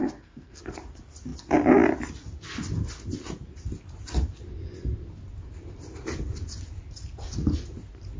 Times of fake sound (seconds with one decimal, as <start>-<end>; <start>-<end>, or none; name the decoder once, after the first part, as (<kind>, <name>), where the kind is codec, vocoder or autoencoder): 0.0-0.6 (codec, SNAC)